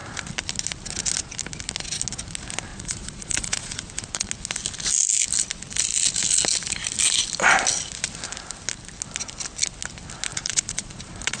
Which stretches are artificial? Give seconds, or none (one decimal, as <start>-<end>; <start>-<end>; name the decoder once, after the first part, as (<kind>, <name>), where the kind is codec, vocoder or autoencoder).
2.7-4.3 (vocoder, Vocos); 10.3-11.4